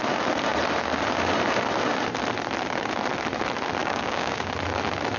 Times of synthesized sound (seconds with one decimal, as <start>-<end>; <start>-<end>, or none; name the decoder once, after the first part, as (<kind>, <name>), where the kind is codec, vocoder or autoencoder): 3.8-4.5 (codec, DAC)